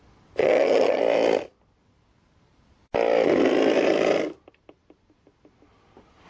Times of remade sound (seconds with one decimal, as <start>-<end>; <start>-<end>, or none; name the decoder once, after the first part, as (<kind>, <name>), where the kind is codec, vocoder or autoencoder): 0.4-1.0 (vocoder, HiFi-GAN)